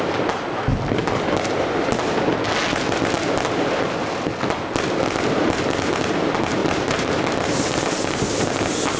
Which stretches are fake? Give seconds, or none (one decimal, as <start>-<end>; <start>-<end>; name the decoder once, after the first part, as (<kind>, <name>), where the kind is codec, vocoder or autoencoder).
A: 6.6-7.8 (vocoder, BigVGAN v2)